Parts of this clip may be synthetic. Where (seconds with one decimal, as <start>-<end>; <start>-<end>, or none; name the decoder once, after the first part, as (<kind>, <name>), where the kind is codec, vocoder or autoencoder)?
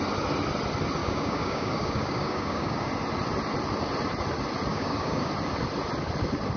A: 1.0-2.9 (codec, DAC); 4.7-5.3